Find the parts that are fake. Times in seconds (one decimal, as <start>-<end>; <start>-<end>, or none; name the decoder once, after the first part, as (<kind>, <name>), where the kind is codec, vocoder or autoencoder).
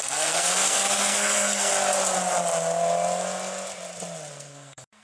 0.0-1.7 (codec, SNAC); 4.3-5.0